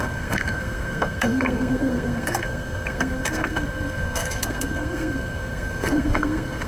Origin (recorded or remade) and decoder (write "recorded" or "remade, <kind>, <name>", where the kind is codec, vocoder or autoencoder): remade, codec, SNAC